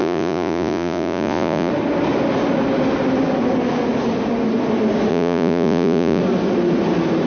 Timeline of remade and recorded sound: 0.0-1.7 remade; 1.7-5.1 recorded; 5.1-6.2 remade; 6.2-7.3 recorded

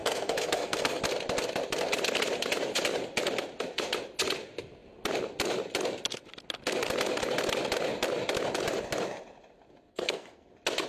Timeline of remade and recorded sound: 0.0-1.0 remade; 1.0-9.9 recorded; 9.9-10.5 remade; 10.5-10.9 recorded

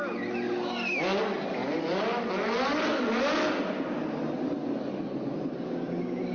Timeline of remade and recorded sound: 0.0-6.3 recorded

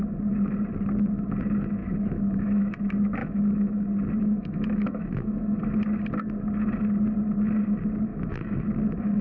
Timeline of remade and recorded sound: 0.0-1.8 recorded; 1.8-2.7 remade; 2.7-3.2 recorded; 3.2-3.8 remade; 3.8-4.2 recorded; 4.2-5.6 remade; 5.6-8.1 recorded; 8.1-8.6 remade; 8.6-9.2 recorded